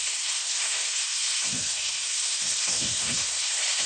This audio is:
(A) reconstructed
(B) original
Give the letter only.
A